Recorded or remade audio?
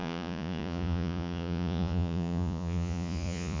remade